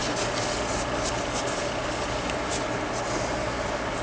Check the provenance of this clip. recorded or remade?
recorded